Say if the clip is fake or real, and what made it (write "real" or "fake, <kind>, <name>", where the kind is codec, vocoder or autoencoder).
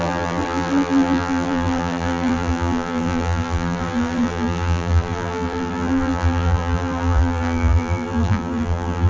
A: fake, vocoder, BigVGAN v2